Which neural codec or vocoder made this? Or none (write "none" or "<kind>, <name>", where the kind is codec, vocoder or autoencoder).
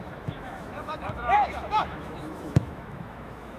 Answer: autoencoder, DAC-VAE